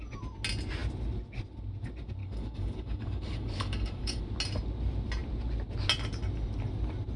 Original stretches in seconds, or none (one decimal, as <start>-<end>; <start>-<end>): 0.0-2.2; 4.2-7.2